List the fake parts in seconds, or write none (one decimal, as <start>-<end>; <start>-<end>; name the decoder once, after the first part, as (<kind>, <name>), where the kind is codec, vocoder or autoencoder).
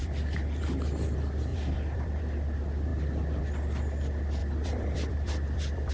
0.0-0.6 (vocoder, BigVGAN v2); 1.5-2.2; 4.4-5.9